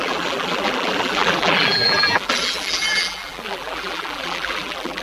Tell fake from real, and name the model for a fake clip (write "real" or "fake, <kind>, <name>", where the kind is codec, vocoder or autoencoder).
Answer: fake, vocoder, BigVGAN v2